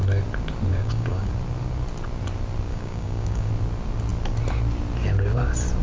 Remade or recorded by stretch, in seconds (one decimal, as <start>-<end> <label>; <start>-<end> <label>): 0.0-0.7 recorded; 0.7-1.3 remade; 1.3-2.7 recorded; 2.7-3.5 remade; 3.5-5.8 recorded